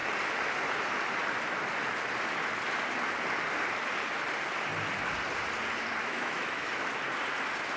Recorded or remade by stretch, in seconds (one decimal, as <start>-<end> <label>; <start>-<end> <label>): 0.0-6.0 recorded; 6.0-6.7 remade; 6.7-7.8 recorded